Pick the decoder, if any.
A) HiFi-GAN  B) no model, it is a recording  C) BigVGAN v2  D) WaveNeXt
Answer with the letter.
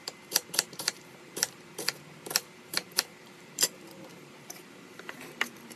C